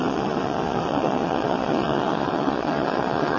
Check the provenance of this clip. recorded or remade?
remade